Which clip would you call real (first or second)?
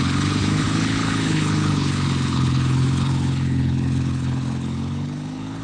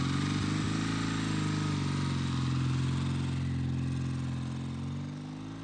second